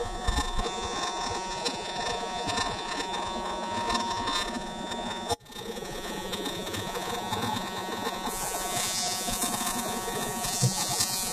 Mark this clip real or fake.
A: fake